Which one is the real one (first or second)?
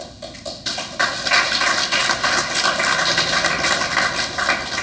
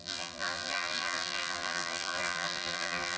first